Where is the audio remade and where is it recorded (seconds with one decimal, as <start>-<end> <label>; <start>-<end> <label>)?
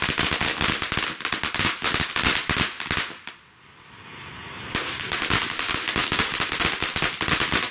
0.0-7.7 recorded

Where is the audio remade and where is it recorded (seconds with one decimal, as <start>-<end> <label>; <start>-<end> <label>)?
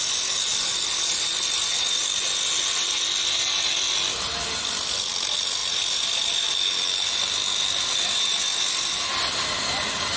0.0-10.2 recorded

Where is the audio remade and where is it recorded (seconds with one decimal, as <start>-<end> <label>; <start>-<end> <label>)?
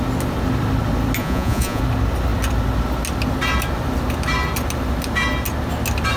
0.0-1.2 recorded; 1.2-1.8 remade; 1.8-6.2 recorded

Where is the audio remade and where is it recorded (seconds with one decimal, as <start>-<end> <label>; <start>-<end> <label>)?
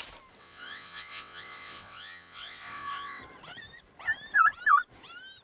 0.0-0.4 recorded; 0.4-3.2 remade; 3.2-5.4 recorded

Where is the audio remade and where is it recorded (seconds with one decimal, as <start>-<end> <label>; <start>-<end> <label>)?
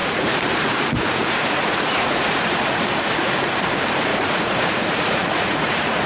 0.0-3.5 remade; 3.5-4.1 recorded; 4.1-6.1 remade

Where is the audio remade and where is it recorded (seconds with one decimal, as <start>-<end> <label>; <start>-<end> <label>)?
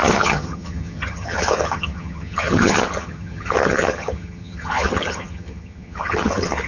0.0-6.7 remade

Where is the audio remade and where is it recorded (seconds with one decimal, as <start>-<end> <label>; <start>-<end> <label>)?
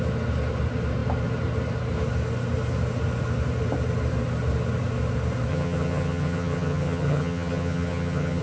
0.0-5.5 recorded; 5.5-8.4 remade